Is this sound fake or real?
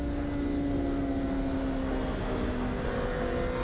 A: real